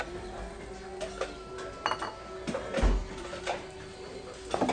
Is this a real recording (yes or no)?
yes